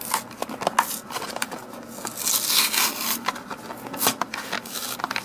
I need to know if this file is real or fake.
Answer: real